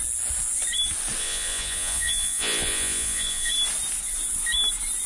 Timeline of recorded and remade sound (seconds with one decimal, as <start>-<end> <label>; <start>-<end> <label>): 0.0-1.2 recorded; 1.2-3.5 remade; 3.5-5.1 recorded